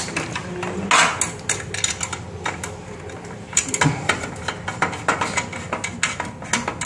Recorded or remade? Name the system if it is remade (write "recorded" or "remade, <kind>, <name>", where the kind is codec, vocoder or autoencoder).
recorded